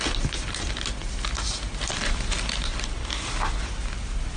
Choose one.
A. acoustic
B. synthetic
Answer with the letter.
A